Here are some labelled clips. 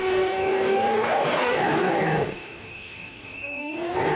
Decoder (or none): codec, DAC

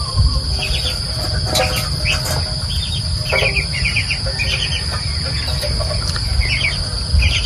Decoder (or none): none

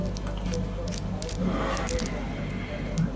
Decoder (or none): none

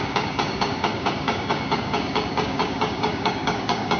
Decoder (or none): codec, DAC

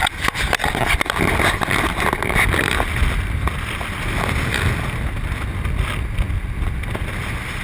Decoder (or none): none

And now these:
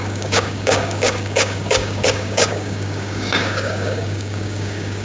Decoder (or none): codec, DAC